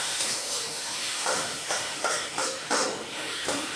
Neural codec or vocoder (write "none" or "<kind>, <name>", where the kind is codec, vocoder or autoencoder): autoencoder, DAC-VAE